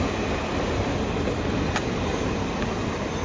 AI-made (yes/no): no